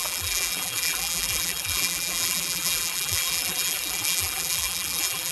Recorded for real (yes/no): no